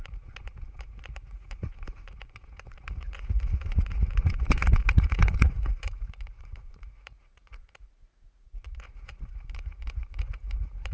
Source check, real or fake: fake